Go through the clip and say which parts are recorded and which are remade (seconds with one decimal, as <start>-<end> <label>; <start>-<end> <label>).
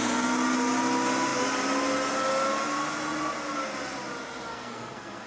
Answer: 0.0-4.5 recorded; 4.5-5.3 remade